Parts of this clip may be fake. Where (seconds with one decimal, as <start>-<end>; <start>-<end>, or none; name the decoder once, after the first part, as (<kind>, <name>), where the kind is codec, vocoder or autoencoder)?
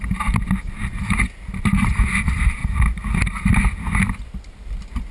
none